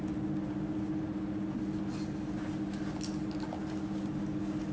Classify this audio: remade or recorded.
recorded